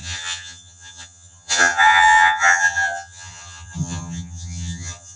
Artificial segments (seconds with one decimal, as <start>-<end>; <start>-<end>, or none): 0.0-5.2